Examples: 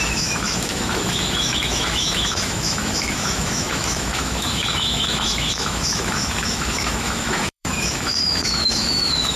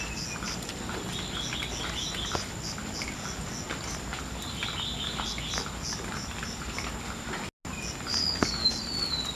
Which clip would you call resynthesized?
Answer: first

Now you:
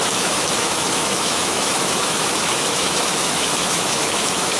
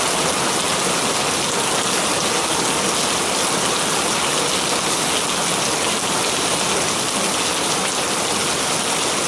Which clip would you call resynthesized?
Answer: first